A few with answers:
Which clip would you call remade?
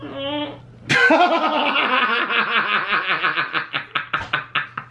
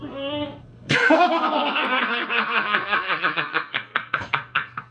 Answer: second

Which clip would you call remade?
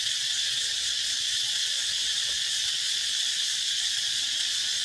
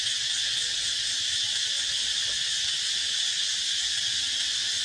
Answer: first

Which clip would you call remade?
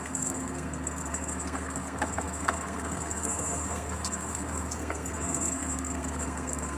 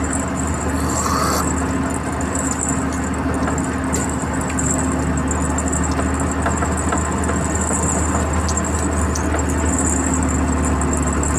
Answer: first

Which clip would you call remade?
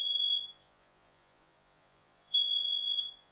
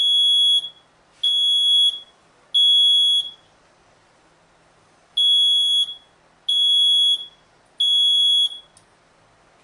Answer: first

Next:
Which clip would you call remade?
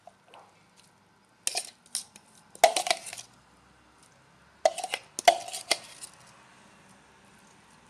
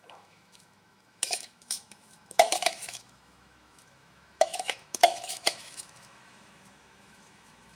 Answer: second